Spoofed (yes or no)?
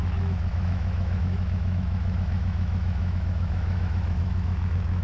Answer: yes